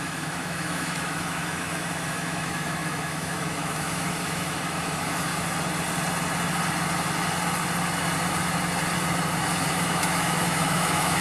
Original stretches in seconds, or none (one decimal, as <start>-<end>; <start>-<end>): 5.3-9.7